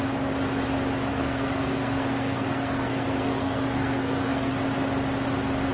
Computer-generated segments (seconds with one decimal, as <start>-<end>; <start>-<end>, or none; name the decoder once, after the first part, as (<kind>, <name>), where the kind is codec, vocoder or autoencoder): 1.1-4.5 (codec, SNAC)